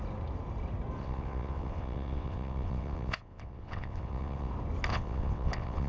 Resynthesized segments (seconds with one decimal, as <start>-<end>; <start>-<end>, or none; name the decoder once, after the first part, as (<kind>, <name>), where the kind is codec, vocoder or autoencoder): 1.0-4.5 (vocoder, WaveNeXt); 4.9-5.9